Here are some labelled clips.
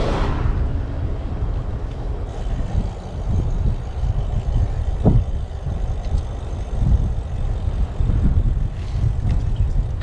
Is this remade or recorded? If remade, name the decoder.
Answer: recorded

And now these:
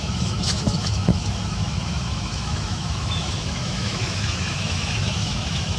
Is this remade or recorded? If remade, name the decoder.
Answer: remade, autoencoder, DAC-VAE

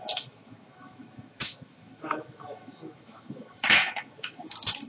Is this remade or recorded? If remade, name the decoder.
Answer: remade, autoencoder, DAC-VAE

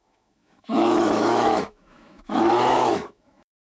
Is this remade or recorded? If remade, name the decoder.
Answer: remade, autoencoder, DAC-VAE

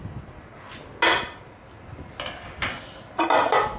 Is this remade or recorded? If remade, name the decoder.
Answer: recorded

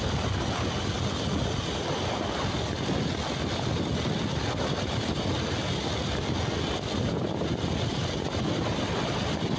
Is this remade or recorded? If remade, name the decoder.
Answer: recorded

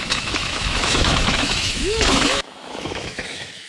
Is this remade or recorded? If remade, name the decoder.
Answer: remade, autoencoder, DAC-VAE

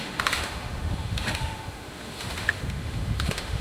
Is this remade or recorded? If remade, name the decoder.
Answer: remade, autoencoder, DAC-VAE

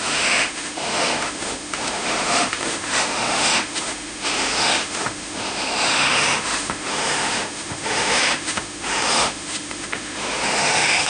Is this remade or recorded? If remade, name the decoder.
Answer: remade, autoencoder, DAC-VAE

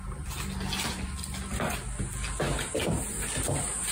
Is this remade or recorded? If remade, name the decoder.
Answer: recorded